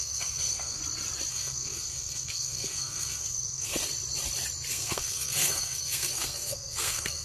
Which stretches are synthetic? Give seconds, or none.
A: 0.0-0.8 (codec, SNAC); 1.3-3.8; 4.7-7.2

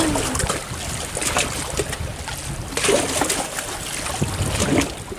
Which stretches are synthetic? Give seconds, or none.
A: none